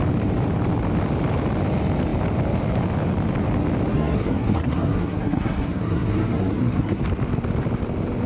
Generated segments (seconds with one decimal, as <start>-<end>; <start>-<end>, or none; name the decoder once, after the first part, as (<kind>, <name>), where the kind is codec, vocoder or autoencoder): 3.9-7.0 (codec, SNAC)